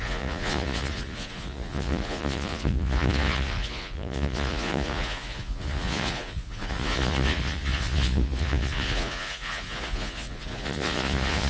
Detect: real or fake fake